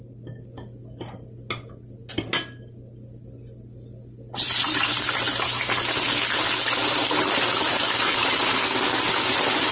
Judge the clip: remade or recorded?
recorded